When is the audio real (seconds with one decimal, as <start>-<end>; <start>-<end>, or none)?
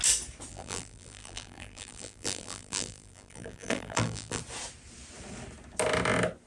0.0-0.5; 4.4-6.5